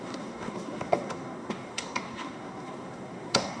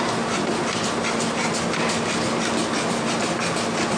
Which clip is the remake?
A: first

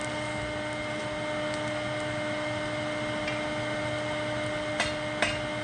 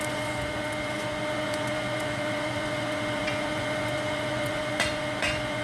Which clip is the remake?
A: second